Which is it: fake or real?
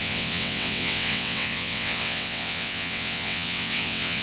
fake